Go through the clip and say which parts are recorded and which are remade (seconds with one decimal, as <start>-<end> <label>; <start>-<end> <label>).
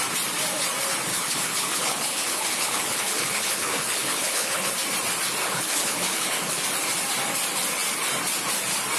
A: 0.0-1.1 recorded; 1.1-4.7 remade; 4.7-5.4 recorded; 5.4-6.6 remade; 6.6-9.0 recorded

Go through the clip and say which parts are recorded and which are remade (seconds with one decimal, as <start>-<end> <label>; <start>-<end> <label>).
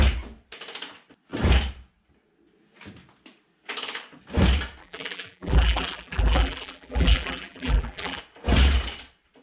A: 0.0-4.8 recorded; 4.8-8.2 remade; 8.2-9.4 recorded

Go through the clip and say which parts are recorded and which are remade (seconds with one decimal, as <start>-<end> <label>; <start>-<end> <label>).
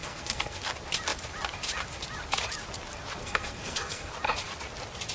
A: 0.0-0.6 remade; 0.6-3.2 recorded; 3.2-4.1 remade; 4.1-5.1 recorded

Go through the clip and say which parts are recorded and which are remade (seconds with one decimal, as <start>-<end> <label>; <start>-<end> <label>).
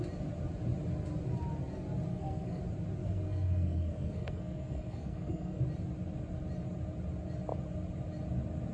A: 0.0-2.1 recorded; 2.1-2.6 remade; 2.6-3.0 recorded; 3.0-5.6 remade; 5.6-8.7 recorded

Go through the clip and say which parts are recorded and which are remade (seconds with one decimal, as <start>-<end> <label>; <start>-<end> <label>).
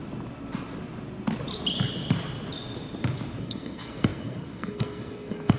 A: 0.0-3.4 recorded; 3.4-5.6 remade